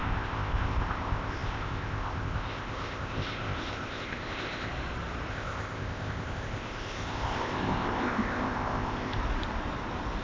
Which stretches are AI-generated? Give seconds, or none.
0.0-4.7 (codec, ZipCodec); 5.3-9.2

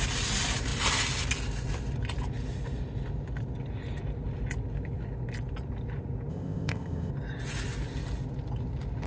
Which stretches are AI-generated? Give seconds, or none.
6.3-7.1 (codec, ZipCodec)

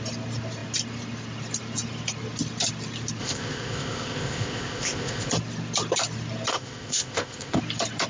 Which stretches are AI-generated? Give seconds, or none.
3.2-5.3 (codec, ZipCodec); 6.5-7.6

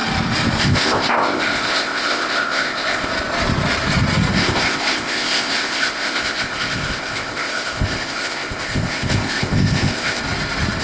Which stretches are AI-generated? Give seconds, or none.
0.6-3.1 (codec, ZipCodec); 4.3-10.2